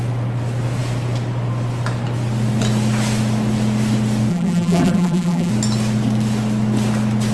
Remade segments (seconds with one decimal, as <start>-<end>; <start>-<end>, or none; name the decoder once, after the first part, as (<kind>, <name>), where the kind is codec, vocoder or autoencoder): 4.3-5.5 (vocoder, BigVGAN v2)